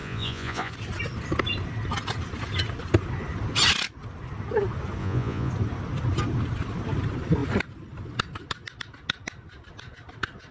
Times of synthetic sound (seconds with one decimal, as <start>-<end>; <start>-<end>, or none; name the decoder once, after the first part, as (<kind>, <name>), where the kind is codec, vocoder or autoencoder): 0.0-0.7 (vocoder, Vocos); 5.0-5.5

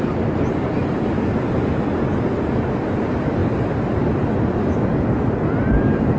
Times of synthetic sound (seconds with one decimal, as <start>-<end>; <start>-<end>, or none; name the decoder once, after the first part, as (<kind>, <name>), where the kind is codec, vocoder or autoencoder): none

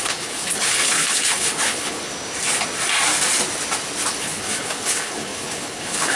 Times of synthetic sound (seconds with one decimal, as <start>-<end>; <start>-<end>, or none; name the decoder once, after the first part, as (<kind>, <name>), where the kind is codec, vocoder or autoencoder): 0.0-2.1 (codec, HILCodec); 4.2-6.2

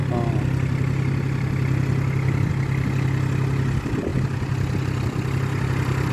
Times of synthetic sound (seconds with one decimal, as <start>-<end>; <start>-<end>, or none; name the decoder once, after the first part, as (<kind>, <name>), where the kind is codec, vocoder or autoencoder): none

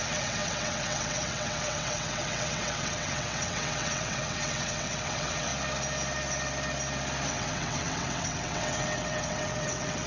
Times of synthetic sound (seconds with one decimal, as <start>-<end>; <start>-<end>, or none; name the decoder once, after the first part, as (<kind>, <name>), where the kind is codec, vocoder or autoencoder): 0.0-5.5 (vocoder, WaveNeXt); 7.3-10.1

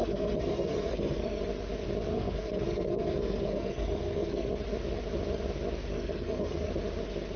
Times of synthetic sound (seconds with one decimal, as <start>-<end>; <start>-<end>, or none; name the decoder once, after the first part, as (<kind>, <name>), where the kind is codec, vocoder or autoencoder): 0.0-1.4 (codec, SNAC); 2.1-4.5; 5.9-6.7

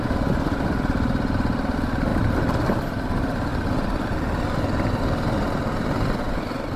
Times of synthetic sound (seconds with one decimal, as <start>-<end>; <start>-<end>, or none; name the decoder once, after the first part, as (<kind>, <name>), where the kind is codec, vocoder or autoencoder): 2.1-2.8 (vocoder, BigVGAN v2)